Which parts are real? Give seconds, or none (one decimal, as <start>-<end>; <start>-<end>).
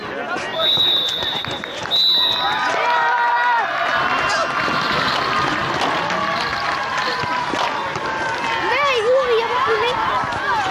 0.0-0.5; 1.2-10.7